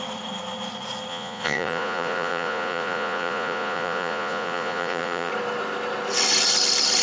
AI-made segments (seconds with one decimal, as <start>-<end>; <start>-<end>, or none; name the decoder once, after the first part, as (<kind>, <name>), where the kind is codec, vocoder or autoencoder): 1.1-5.3 (vocoder, Vocos)